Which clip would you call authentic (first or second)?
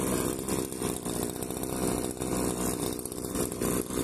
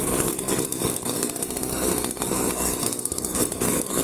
first